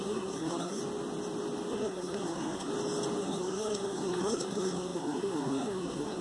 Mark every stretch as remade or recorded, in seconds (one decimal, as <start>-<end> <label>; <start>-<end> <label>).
0.0-0.8 remade; 0.8-1.7 recorded; 1.7-2.7 remade; 2.7-3.2 recorded; 3.2-6.2 remade